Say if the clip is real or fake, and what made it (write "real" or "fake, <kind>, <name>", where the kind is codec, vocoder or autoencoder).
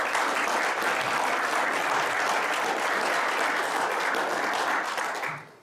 real